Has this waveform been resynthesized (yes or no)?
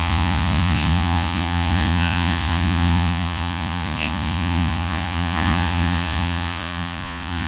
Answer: yes